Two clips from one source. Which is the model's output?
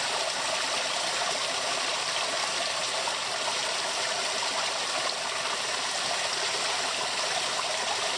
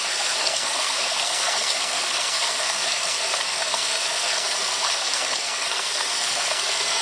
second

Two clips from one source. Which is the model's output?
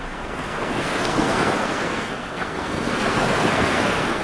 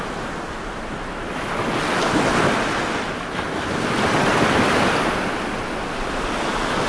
first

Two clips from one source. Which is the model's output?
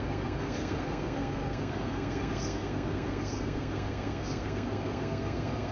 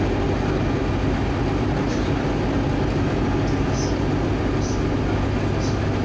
first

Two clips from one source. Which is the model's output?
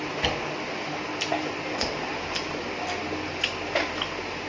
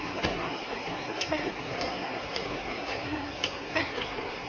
second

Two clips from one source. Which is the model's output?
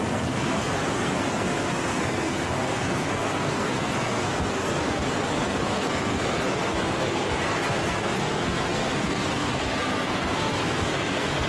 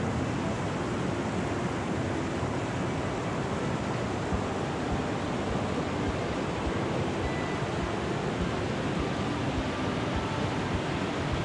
first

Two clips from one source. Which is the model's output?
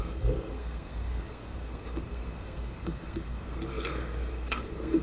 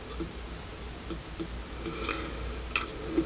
first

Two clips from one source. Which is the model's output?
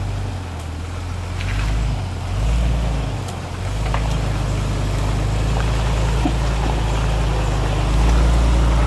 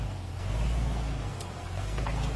second